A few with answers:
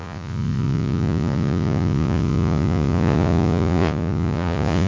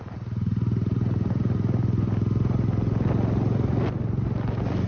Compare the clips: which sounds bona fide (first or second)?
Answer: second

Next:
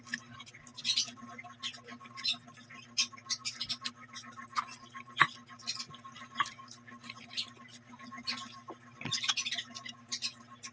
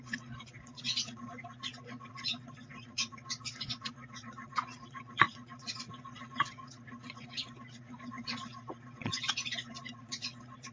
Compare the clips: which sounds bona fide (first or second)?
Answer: first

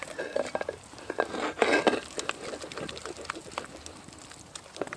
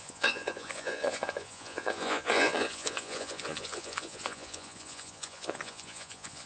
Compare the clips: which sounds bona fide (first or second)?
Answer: first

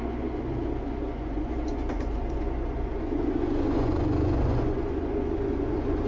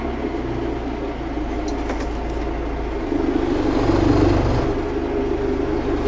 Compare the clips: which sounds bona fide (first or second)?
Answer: second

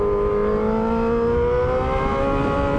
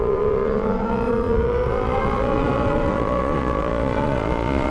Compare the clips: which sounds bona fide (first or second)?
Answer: first